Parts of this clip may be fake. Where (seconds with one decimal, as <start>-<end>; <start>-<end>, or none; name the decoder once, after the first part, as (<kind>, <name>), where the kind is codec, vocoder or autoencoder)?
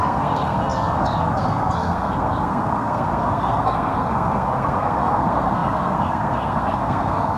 0.0-7.4 (codec, SNAC)